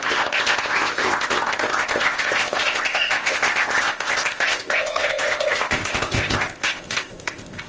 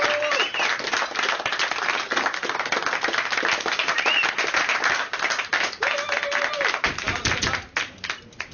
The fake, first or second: first